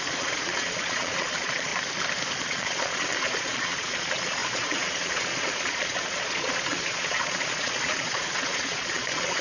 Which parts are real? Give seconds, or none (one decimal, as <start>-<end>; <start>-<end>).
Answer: 1.7-2.4